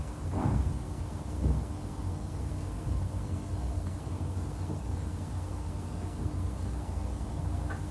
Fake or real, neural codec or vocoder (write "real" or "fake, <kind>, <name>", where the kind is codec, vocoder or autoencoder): fake, codec, SNAC